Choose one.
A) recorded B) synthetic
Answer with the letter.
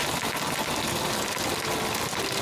A